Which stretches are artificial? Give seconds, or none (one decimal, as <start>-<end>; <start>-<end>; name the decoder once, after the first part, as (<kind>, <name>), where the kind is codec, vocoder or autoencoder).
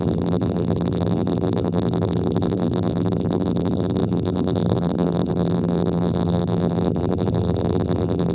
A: 0.0-8.3 (vocoder, BigVGAN v2)